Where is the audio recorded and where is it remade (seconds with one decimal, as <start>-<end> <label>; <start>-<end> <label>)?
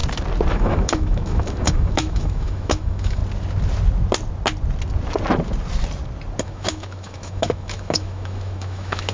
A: 0.0-0.5 recorded; 0.5-3.2 remade; 3.2-6.4 recorded; 6.4-9.1 remade